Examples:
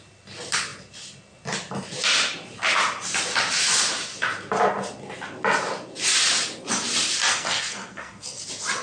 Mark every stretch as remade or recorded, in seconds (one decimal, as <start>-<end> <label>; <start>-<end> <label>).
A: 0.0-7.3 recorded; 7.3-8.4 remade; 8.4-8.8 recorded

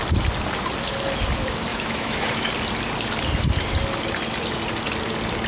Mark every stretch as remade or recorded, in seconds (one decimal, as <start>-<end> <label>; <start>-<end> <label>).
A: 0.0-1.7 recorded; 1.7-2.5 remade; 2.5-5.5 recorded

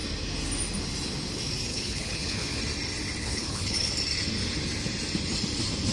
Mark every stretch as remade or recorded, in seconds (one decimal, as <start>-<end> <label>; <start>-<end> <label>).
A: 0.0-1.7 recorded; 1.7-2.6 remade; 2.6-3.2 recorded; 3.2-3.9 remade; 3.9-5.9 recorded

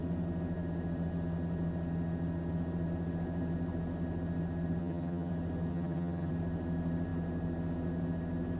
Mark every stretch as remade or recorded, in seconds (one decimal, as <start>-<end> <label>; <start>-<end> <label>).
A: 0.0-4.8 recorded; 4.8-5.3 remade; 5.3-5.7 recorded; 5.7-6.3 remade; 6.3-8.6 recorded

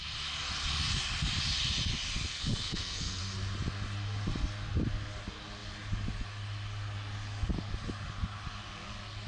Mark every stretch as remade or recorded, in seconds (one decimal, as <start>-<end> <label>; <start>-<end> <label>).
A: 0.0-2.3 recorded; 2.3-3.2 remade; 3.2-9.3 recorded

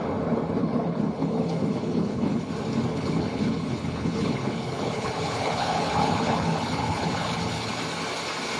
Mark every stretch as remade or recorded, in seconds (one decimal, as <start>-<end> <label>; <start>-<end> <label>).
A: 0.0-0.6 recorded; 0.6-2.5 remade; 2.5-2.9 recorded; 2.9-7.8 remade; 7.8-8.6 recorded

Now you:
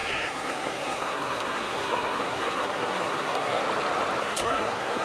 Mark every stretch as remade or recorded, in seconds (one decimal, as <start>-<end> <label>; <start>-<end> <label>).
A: 0.0-3.6 remade; 3.6-4.2 recorded; 4.2-5.0 remade

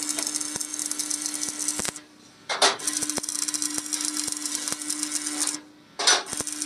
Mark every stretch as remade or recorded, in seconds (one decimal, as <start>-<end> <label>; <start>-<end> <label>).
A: 0.0-0.7 recorded; 0.7-4.5 remade; 4.5-6.7 recorded